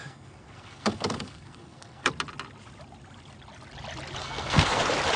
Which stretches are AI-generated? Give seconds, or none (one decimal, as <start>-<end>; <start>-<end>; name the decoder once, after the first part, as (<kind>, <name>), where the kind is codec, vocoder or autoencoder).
0.0-2.1 (codec, SNAC); 4.2-4.8